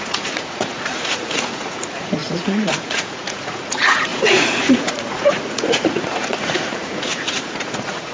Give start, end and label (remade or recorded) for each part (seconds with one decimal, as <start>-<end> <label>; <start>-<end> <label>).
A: 0.0-8.1 remade